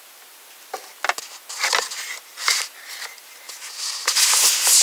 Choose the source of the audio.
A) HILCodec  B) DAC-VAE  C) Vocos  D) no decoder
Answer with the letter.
D